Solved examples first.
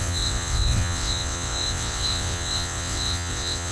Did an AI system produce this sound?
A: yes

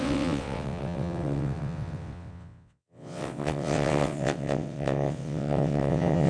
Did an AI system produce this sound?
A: yes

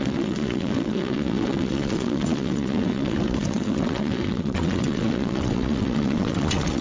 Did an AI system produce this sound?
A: yes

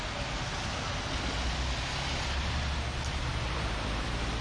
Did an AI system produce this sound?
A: no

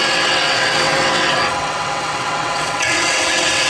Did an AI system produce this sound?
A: yes